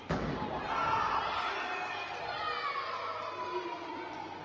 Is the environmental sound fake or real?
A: real